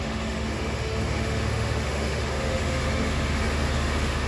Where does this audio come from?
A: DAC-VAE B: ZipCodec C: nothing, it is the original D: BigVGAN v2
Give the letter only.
A